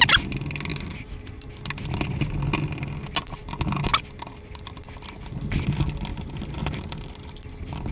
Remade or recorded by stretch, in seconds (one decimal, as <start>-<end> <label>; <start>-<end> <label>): 0.0-6.1 recorded; 6.1-7.0 remade; 7.0-7.9 recorded

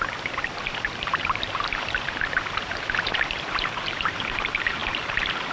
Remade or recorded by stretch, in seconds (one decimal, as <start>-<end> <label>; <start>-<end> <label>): 0.0-5.5 remade

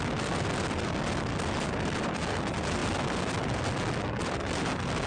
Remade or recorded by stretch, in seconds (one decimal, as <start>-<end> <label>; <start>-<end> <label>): 0.0-2.8 remade; 2.8-4.2 recorded; 4.2-5.1 remade

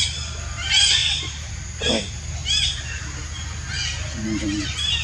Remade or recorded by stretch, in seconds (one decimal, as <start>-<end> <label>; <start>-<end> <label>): 0.0-1.0 recorded; 1.0-1.5 remade; 1.5-2.4 recorded; 2.4-3.3 remade; 3.3-5.0 recorded

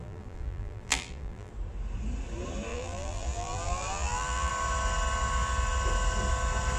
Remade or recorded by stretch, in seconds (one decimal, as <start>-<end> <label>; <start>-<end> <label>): 0.0-1.5 remade; 1.5-2.7 recorded; 2.7-4.5 remade; 4.5-6.8 recorded

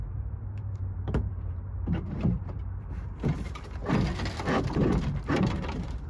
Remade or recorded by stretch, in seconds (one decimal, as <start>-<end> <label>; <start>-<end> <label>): 0.0-3.8 remade; 3.8-4.6 recorded; 4.6-6.1 remade

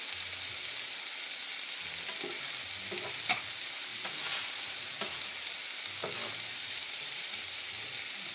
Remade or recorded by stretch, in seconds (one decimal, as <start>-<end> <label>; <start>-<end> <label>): 0.0-3.9 recorded; 3.9-5.1 remade; 5.1-6.2 recorded; 6.2-7.6 remade; 7.6-8.3 recorded

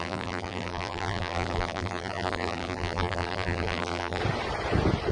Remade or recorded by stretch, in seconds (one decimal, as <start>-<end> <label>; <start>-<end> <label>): 0.0-4.2 remade; 4.2-5.1 recorded